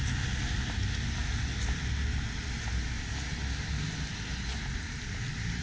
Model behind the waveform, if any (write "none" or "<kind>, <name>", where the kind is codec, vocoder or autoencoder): none